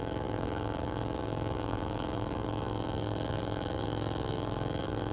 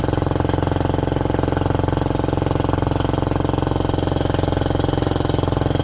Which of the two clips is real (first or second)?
second